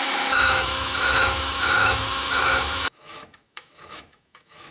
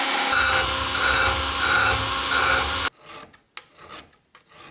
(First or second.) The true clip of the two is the second